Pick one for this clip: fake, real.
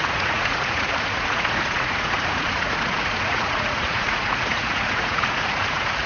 fake